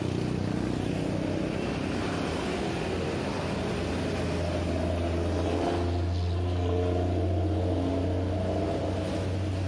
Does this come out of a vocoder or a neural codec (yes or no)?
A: no